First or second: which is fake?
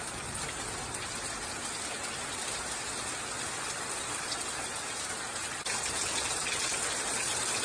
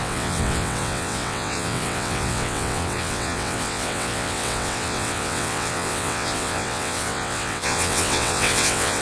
second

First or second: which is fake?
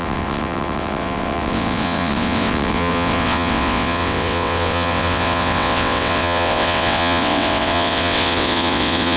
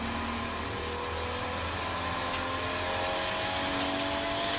first